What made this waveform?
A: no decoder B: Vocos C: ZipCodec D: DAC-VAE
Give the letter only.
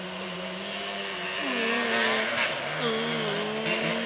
A